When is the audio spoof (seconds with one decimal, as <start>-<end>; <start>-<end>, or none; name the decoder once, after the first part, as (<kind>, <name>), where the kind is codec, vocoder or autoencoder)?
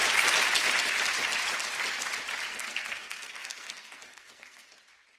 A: 2.5-4.7 (codec, SNAC)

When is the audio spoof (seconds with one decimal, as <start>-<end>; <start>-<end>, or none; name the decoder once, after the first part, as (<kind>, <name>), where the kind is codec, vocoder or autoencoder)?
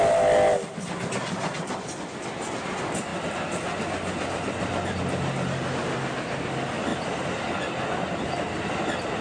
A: none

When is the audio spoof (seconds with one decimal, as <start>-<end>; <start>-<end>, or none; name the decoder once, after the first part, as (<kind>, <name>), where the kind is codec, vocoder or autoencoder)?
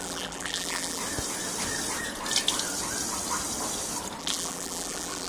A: 0.0-1.0 (vocoder, BigVGAN v2); 4.2-5.3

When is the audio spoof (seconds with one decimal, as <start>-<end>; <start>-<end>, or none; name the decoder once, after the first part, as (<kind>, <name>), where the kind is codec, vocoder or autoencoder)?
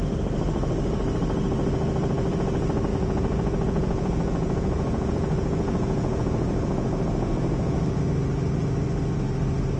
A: 2.9-8.0 (vocoder, Vocos)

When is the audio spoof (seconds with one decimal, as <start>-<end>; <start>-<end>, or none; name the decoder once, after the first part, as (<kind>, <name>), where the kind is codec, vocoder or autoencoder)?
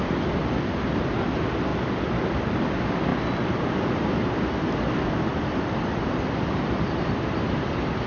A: 1.7-2.4 (vocoder, BigVGAN v2); 3.1-4.3; 5.3-7.6